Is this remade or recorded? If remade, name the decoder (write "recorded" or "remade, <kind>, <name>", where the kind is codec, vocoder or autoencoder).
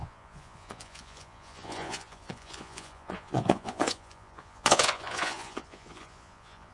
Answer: remade, vocoder, Vocos